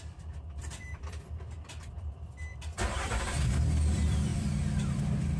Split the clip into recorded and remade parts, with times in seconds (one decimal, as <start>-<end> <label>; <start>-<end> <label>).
0.0-0.6 recorded; 0.6-2.1 remade; 2.1-2.5 recorded; 2.5-3.2 remade; 3.2-4.3 recorded; 4.3-5.0 remade; 5.0-5.4 recorded